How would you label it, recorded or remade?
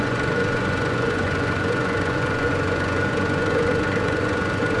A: remade